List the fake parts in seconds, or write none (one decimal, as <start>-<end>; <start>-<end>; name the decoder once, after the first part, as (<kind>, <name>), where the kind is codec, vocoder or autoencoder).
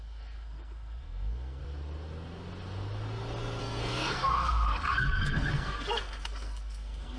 0.0-1.6 (codec, SNAC); 3.6-7.2